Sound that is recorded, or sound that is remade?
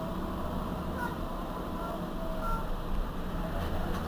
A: remade